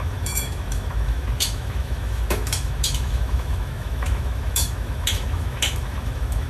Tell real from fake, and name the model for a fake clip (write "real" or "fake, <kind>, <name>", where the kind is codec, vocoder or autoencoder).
fake, autoencoder, DAC-VAE